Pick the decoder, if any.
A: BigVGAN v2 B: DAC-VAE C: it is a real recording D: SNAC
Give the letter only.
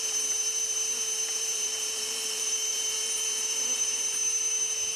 A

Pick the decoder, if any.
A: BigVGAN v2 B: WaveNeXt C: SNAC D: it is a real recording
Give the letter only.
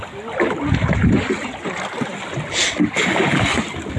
D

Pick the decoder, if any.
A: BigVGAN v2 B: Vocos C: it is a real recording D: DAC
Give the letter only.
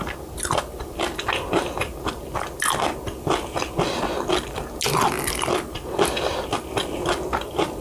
C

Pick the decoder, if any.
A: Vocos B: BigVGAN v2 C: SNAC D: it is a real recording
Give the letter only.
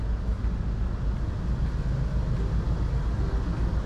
D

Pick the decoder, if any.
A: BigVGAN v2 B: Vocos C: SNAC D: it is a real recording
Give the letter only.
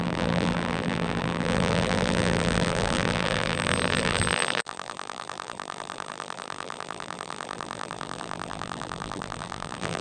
A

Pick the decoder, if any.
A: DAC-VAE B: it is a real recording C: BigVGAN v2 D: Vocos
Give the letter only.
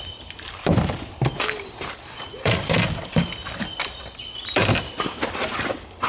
C